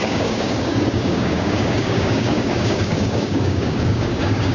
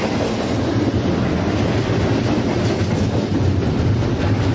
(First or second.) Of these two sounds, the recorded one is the second